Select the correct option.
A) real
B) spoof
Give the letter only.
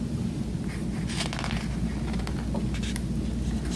A